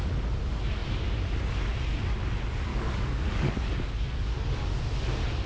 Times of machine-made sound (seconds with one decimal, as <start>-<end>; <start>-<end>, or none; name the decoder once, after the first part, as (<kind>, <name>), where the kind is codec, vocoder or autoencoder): 2.7-4.8 (codec, DAC)